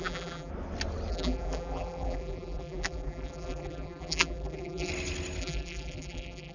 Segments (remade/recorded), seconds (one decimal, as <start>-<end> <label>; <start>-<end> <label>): 0.0-0.5 remade; 0.5-1.1 recorded; 1.1-4.9 remade; 4.9-5.4 recorded; 5.4-6.5 remade